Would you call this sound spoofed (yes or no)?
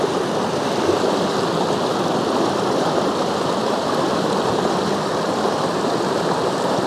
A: no